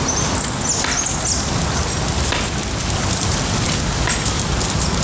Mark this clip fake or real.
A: real